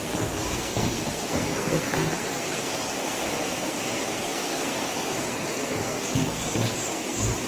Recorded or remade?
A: remade